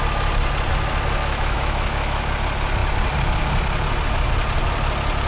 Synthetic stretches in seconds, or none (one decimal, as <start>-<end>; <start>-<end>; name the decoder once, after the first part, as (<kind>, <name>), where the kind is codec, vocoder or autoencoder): 1.2-2.3 (autoencoder, DAC-VAE)